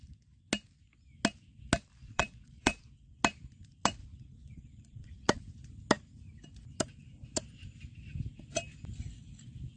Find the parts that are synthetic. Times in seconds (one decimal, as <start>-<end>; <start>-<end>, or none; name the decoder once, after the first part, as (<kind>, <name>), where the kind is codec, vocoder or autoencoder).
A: 2.0-3.2 (vocoder, Vocos); 4.0-5.4